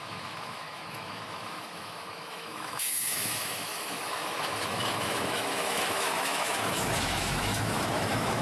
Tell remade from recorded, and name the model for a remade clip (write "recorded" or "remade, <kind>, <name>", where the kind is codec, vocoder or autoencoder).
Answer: remade, autoencoder, DAC-VAE